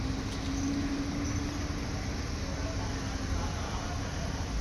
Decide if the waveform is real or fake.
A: real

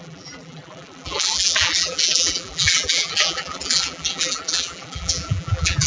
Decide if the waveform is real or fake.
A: fake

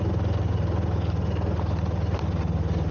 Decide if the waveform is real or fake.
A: real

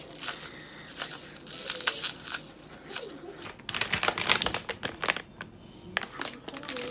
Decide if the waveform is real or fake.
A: real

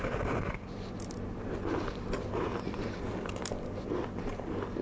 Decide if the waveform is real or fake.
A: fake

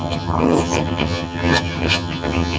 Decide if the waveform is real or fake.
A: fake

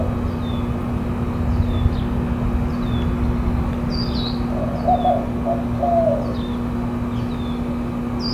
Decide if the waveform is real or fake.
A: real